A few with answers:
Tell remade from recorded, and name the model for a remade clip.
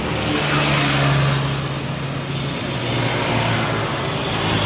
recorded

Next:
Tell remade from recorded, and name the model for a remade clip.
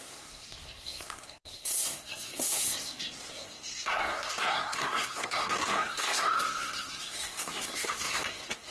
remade, codec, SNAC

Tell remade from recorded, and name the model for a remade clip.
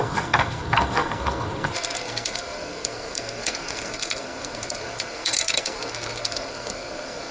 remade, codec, SNAC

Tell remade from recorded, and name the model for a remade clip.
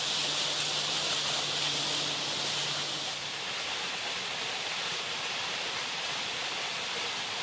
recorded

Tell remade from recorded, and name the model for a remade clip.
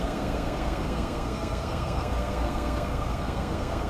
remade, codec, SNAC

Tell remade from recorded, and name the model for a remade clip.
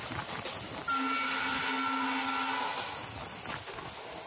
recorded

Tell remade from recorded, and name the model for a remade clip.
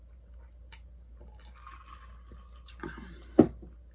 recorded